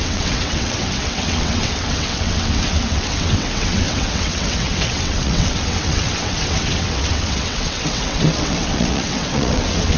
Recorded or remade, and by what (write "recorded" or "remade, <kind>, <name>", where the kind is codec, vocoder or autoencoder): remade, vocoder, WaveNeXt